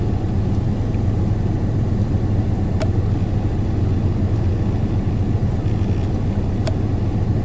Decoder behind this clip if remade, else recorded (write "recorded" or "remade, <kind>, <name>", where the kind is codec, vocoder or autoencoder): recorded